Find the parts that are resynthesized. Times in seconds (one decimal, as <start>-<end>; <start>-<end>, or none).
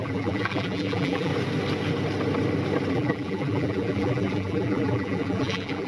0.0-1.3; 2.9-5.9